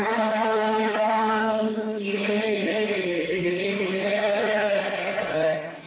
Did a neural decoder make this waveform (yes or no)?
yes